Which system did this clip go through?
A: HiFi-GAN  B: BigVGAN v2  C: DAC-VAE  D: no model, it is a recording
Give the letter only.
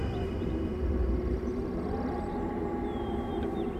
B